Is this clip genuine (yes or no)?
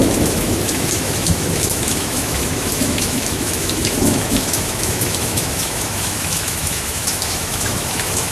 no